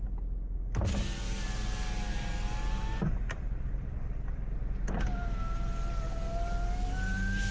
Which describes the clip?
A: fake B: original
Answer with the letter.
B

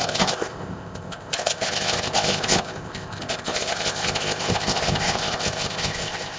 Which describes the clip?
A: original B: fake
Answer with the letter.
B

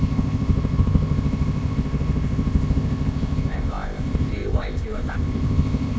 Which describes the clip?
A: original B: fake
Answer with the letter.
B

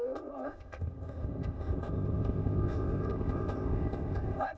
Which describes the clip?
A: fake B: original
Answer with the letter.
A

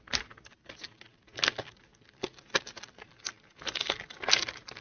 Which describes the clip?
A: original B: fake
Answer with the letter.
A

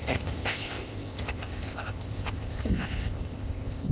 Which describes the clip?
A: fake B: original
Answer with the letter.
A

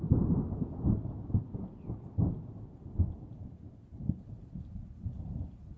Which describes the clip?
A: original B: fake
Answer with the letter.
A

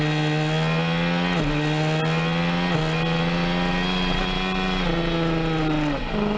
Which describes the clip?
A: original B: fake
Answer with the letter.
A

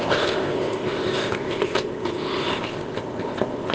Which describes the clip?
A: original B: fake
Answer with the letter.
B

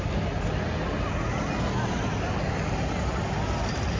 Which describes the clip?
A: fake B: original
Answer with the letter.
B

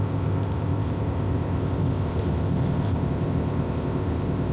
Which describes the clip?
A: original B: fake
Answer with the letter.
B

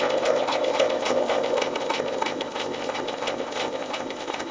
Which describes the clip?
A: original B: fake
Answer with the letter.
B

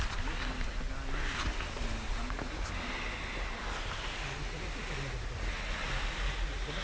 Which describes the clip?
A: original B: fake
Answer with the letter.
A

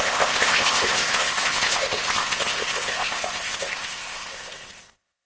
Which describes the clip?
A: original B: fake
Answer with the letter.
B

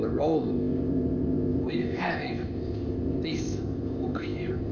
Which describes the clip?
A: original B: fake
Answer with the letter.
B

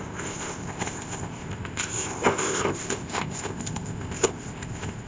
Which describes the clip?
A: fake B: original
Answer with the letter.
A